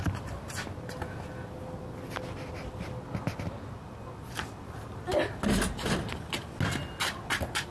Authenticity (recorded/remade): recorded